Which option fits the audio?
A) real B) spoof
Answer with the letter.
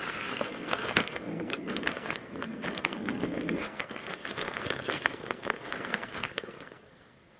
B